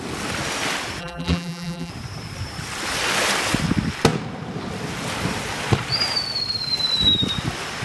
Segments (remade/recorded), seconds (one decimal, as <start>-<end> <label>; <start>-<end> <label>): 0.0-1.0 recorded; 1.0-1.9 remade; 1.9-7.8 recorded